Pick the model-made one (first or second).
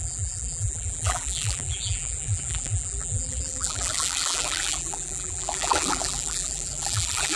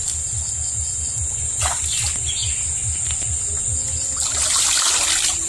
first